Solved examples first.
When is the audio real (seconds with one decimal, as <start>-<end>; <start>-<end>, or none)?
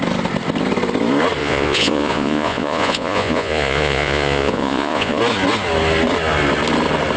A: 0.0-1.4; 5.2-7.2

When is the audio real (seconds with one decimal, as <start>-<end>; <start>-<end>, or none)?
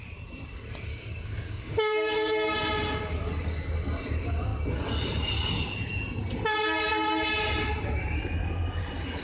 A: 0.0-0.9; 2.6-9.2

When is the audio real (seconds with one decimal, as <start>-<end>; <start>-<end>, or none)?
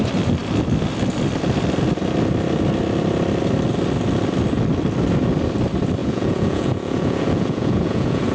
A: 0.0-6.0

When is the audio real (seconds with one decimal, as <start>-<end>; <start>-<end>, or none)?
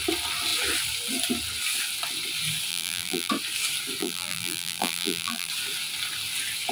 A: 0.0-2.7; 3.3-4.0; 5.5-6.7